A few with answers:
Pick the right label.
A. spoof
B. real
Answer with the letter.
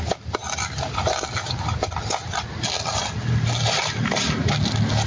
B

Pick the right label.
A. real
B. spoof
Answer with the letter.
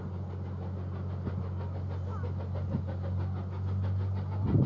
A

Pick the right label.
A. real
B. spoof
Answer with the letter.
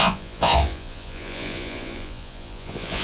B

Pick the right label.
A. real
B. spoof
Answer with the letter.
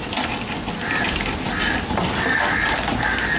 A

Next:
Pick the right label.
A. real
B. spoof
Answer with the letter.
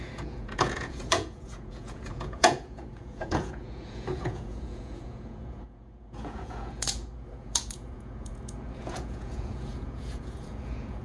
B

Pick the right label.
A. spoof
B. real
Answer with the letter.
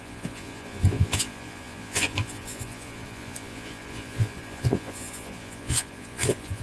A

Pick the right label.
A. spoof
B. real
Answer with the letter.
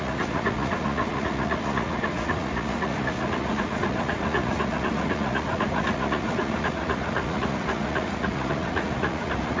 A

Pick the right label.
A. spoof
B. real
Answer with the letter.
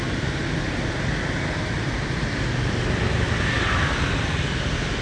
B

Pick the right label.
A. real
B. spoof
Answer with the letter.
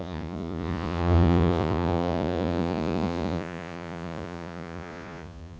B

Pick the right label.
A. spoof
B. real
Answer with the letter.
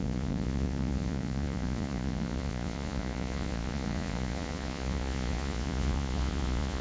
A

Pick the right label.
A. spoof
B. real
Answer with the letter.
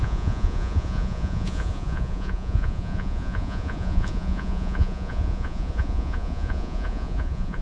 A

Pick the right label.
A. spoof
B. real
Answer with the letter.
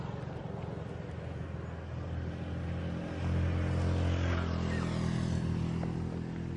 B